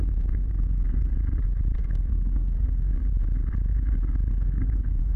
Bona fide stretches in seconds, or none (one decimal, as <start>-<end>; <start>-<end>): 1.1-1.8; 3.0-4.3